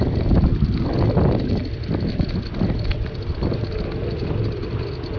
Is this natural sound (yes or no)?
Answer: yes